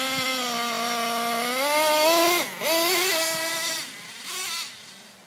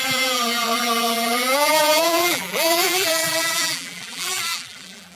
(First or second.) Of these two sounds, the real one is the first